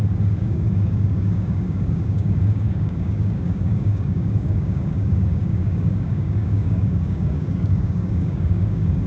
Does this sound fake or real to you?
fake